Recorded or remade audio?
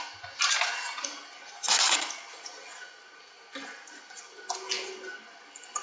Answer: recorded